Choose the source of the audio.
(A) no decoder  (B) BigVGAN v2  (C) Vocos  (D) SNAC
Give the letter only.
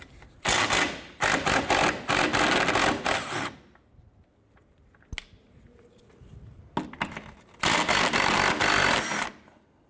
A